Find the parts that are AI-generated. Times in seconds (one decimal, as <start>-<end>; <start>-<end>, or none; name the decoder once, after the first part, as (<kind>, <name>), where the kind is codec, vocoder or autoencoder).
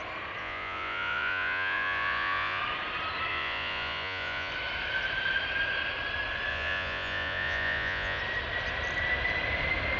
0.4-2.6 (vocoder, Vocos); 3.3-4.5; 6.5-8.2